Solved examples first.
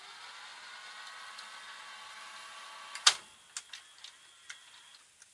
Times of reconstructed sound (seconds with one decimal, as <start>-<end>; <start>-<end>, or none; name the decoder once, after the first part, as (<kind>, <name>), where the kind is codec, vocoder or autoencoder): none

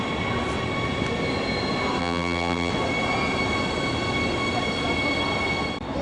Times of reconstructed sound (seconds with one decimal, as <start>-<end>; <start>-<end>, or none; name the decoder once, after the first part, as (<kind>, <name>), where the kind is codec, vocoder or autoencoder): 2.0-2.7 (vocoder, BigVGAN v2)

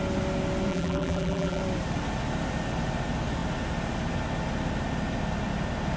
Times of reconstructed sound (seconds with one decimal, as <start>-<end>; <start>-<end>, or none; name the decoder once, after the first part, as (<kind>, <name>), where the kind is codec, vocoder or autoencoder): 0.7-1.6 (vocoder, BigVGAN v2)